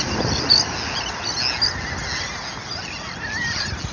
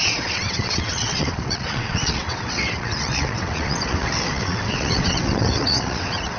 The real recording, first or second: first